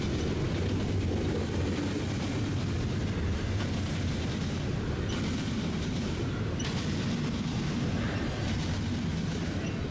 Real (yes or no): yes